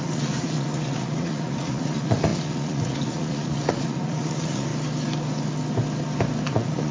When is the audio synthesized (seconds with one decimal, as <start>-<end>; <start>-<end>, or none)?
0.0-4.7; 6.5-6.9